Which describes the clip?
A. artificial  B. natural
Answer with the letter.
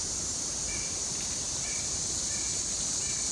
B